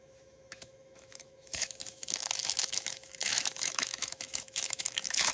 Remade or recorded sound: remade